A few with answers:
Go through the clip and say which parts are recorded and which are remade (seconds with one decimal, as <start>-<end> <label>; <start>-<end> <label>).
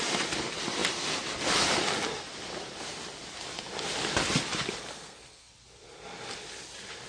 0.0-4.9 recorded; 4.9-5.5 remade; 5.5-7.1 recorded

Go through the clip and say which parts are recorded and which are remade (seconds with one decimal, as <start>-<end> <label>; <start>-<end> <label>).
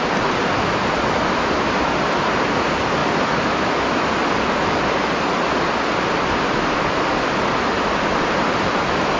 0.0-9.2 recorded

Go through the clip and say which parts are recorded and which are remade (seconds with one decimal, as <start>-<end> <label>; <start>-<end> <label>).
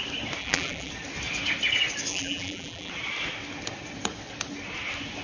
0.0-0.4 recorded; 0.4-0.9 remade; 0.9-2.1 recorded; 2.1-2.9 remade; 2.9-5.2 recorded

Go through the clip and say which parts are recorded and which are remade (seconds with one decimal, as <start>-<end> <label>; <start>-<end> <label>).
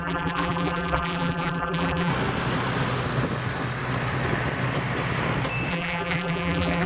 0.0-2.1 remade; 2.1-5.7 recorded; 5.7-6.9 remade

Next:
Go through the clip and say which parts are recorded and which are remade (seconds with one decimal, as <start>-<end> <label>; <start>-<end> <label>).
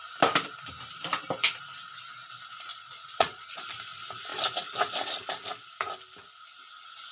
0.0-2.7 recorded; 2.7-3.6 remade; 3.6-7.1 recorded